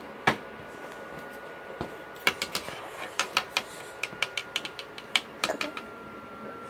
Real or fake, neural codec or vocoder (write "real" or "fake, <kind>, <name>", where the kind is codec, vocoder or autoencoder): fake, vocoder, BigVGAN v2